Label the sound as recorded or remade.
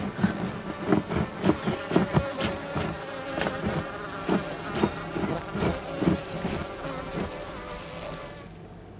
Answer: recorded